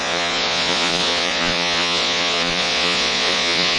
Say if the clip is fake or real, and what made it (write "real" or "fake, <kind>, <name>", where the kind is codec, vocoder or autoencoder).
fake, vocoder, Vocos